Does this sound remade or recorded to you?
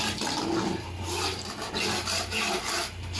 remade